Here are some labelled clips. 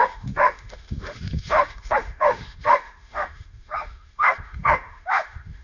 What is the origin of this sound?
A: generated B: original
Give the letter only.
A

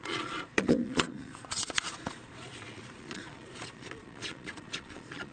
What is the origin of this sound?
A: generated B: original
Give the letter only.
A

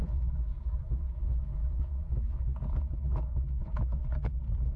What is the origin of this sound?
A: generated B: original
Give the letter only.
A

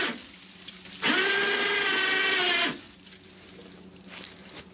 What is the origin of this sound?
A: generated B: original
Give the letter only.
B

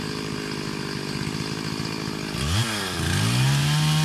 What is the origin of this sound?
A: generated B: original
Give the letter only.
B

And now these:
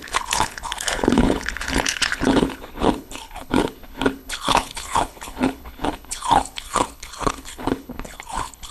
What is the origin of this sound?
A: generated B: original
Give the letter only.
A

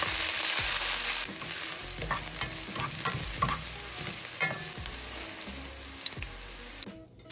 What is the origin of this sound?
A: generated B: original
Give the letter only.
B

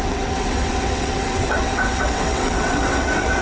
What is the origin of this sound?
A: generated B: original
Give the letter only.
A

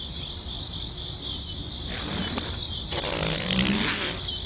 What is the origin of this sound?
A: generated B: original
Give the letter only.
B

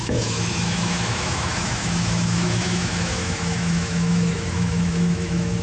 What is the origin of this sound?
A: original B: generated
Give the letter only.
B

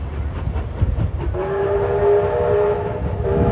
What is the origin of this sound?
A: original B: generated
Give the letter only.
A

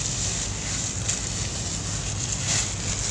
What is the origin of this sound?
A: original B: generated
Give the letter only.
A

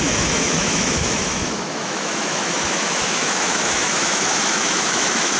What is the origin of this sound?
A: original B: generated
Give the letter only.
B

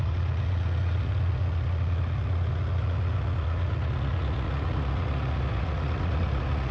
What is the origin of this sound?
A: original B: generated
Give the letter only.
B